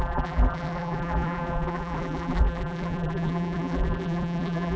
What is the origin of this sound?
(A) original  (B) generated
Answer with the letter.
B